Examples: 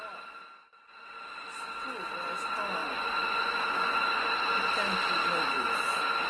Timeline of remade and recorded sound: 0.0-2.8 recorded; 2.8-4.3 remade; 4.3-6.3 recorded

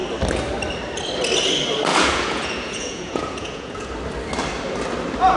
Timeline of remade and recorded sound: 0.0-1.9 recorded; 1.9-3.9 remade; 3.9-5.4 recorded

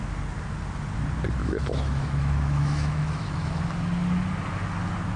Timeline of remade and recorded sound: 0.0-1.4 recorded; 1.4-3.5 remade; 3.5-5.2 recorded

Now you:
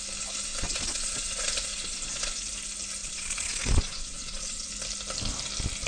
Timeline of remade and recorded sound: 0.0-0.5 recorded; 0.5-2.4 remade; 2.4-3.0 recorded; 3.0-4.7 remade; 4.7-5.9 recorded

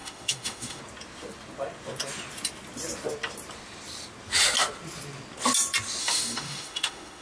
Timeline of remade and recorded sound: 0.0-0.8 remade; 0.8-6.0 recorded; 6.0-7.2 remade

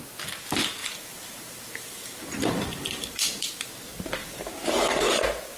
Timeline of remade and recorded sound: 0.0-0.8 recorded; 0.8-3.7 remade; 3.7-4.2 recorded; 4.2-5.1 remade; 5.1-5.6 recorded

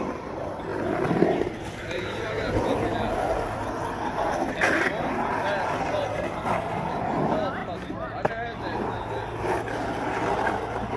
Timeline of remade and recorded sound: 0.0-7.6 recorded; 7.6-8.3 remade; 8.3-11.0 recorded